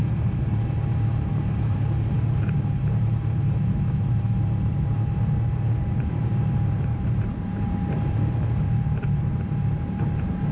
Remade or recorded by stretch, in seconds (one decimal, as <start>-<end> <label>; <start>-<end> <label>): 0.0-10.5 remade